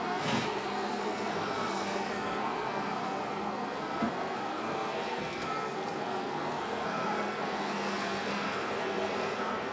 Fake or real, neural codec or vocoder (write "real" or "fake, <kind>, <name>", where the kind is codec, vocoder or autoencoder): fake, codec, SNAC